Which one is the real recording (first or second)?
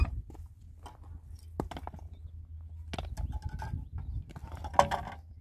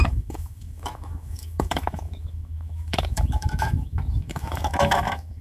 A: first